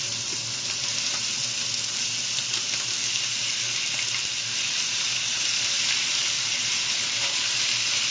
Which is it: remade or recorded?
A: recorded